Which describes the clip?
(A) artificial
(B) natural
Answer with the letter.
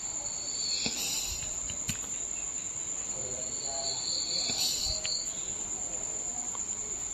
B